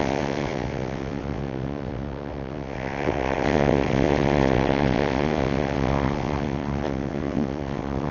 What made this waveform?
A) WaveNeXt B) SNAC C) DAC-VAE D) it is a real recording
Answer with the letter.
A